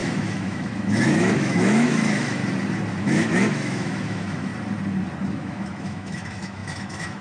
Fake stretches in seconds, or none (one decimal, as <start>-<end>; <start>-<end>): 0.0-2.4; 3.0-4.5; 5.3-7.2